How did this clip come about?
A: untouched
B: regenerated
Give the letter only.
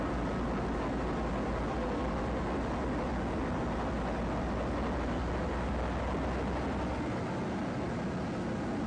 A